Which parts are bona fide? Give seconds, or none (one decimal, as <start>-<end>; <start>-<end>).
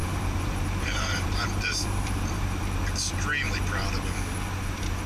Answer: 2.6-5.1